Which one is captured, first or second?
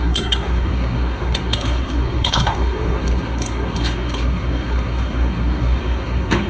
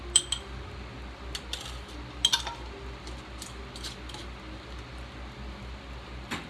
second